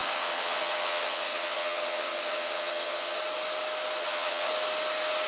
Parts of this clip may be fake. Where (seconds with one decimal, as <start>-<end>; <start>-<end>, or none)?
0.0-3.2; 4.0-4.5